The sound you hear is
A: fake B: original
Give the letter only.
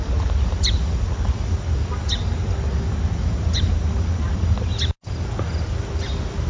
B